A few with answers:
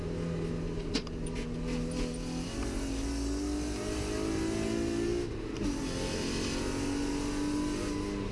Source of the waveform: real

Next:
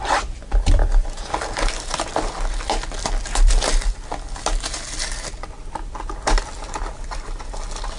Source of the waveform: real